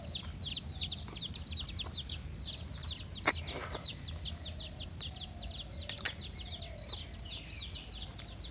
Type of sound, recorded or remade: recorded